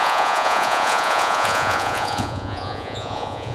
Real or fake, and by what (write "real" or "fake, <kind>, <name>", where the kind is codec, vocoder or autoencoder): fake, vocoder, Vocos